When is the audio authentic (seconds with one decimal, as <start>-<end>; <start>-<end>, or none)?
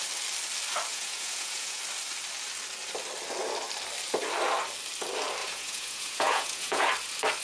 0.0-0.9; 1.8-5.4; 6.9-7.4